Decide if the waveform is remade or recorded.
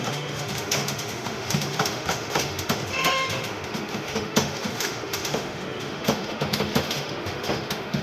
remade